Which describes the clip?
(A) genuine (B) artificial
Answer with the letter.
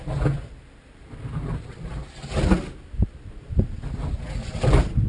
A